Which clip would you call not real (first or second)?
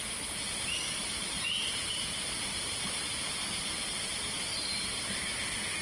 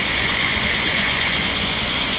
second